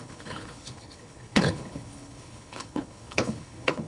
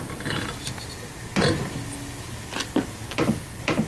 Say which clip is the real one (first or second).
second